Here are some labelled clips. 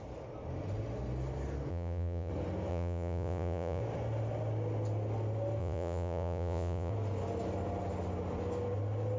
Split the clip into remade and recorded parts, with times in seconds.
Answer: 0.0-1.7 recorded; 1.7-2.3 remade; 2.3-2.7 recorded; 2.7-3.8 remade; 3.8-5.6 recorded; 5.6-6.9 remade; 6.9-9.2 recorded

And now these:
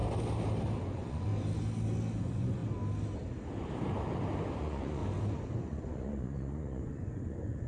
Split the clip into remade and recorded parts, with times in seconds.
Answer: 0.0-0.8 recorded; 0.8-1.3 remade; 1.3-2.2 recorded; 2.2-2.6 remade; 2.6-4.6 recorded; 4.6-5.0 remade; 5.0-5.6 recorded; 5.6-7.7 remade

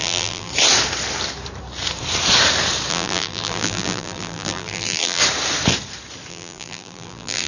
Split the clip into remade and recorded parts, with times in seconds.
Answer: 0.0-0.5 remade; 0.5-2.9 recorded; 2.9-5.2 remade; 5.2-6.3 recorded; 6.3-7.5 remade

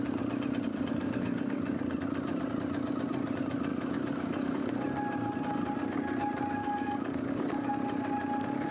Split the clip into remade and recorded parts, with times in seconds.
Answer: 0.0-0.9 recorded; 0.9-1.8 remade; 1.8-3.7 recorded; 3.7-4.7 remade; 4.7-6.6 recorded; 6.6-7.7 remade; 7.7-8.7 recorded

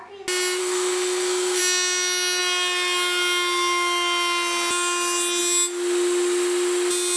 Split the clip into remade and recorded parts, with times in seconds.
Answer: 0.0-0.6 recorded; 0.6-1.6 remade; 1.6-7.2 recorded

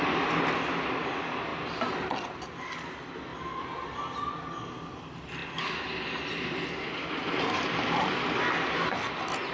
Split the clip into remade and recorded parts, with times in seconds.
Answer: 0.0-9.5 recorded

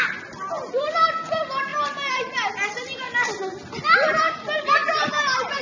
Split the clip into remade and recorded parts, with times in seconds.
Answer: 0.0-5.6 recorded

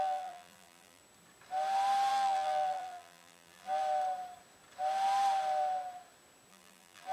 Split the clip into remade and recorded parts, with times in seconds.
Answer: 0.0-1.0 remade; 1.0-2.1 recorded; 2.1-3.8 remade; 3.8-6.5 recorded; 6.5-7.1 remade